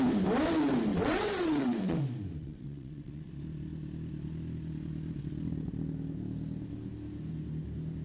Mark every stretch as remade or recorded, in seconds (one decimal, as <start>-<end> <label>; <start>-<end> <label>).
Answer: 0.0-0.9 recorded; 0.9-2.0 remade; 2.0-2.4 recorded; 2.4-3.3 remade; 3.3-8.0 recorded